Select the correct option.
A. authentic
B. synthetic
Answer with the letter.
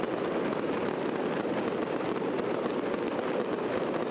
A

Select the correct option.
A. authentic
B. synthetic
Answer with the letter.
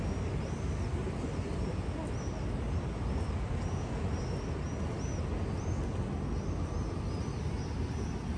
A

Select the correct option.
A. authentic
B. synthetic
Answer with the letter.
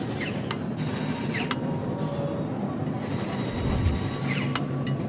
A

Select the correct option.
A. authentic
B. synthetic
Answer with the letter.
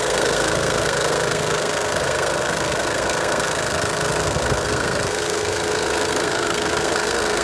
B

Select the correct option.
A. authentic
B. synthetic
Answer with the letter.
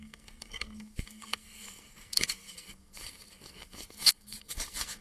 B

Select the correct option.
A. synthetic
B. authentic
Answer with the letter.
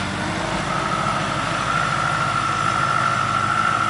B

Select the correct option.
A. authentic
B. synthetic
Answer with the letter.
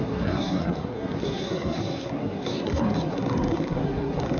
B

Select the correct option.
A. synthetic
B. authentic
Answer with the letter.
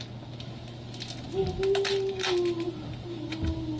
B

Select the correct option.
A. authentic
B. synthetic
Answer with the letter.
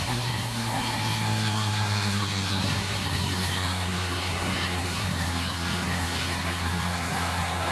B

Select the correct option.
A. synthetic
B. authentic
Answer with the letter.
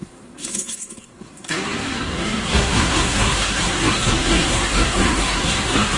A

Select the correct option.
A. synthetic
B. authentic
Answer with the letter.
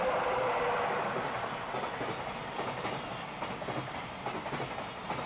B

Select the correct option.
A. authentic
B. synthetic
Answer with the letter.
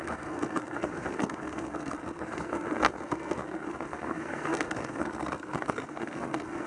B